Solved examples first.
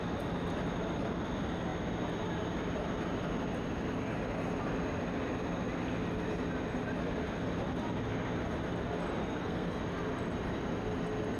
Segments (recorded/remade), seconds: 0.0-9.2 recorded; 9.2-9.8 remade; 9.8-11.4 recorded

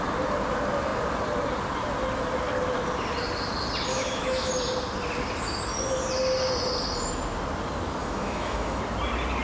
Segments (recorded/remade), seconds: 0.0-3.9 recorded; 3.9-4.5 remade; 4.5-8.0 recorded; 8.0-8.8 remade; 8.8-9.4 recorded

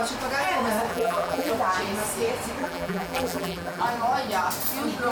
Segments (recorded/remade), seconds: 0.0-0.9 recorded; 0.9-1.5 remade; 1.5-2.6 recorded; 2.6-3.8 remade; 3.8-5.1 recorded

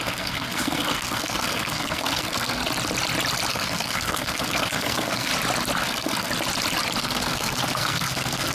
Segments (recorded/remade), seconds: 0.0-2.6 remade; 2.6-3.5 recorded; 3.5-5.3 remade; 5.3-5.8 recorded; 5.8-6.3 remade; 6.3-7.0 recorded; 7.0-8.5 remade